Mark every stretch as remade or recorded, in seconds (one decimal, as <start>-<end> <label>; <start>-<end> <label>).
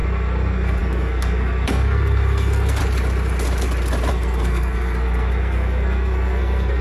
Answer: 0.0-2.8 remade; 2.8-4.1 recorded; 4.1-6.8 remade